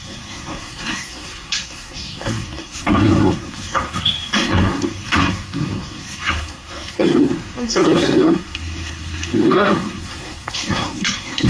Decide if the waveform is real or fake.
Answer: fake